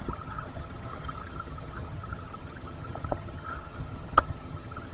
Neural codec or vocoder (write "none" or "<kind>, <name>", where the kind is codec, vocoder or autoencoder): vocoder, HiFi-GAN